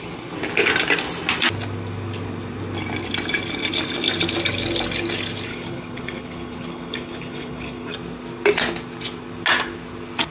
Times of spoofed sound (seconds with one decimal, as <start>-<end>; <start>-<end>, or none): 5.5-7.9